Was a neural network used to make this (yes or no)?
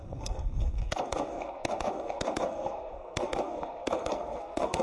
yes